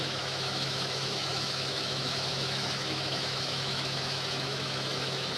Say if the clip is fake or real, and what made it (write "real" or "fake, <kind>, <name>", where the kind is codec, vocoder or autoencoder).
fake, autoencoder, DAC-VAE